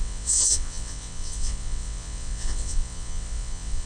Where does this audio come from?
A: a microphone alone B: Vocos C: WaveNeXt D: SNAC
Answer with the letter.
C